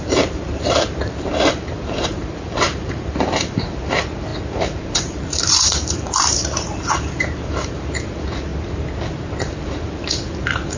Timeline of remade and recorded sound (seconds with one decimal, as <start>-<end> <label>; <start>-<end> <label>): 0.0-8.5 remade; 8.5-9.6 recorded; 9.6-10.8 remade